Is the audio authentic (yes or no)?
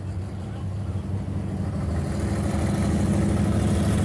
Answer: yes